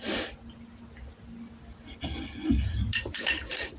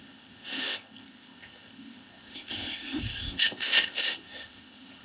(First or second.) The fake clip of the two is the second